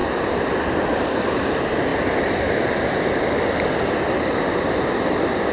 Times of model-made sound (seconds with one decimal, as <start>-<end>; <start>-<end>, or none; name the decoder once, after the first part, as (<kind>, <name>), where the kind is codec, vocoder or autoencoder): none